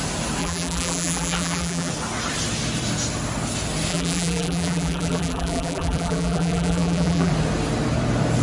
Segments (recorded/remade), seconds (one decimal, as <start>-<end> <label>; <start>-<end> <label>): 0.0-0.4 recorded; 0.4-1.9 remade; 1.9-3.9 recorded; 3.9-7.3 remade; 7.3-8.4 recorded